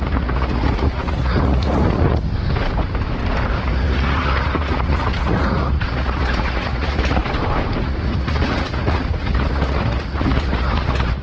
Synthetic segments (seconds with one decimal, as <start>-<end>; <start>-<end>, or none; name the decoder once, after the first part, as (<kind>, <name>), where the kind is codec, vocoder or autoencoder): 0.0-2.3 (vocoder, Vocos); 3.6-7.2; 7.8-11.2